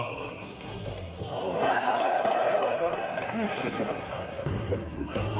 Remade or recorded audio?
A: remade